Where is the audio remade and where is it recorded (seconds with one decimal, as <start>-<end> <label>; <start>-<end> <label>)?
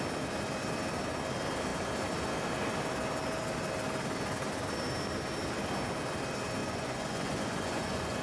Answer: 0.0-6.6 recorded; 6.6-8.2 remade